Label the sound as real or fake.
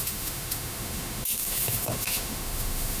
fake